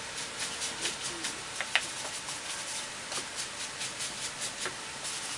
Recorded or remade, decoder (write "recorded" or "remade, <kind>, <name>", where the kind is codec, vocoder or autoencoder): recorded